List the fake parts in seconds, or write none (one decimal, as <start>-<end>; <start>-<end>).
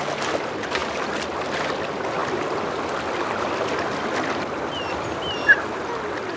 none